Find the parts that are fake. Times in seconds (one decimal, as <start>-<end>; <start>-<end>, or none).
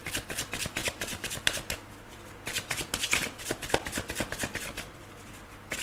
0.0-5.8